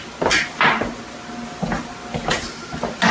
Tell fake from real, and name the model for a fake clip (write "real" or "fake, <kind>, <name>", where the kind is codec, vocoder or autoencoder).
real